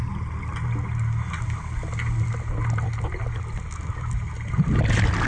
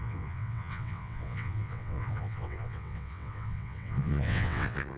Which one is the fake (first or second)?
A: second